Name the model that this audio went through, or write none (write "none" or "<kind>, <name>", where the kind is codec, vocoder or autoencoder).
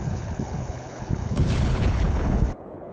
codec, HILCodec